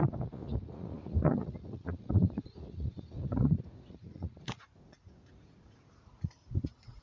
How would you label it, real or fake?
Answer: fake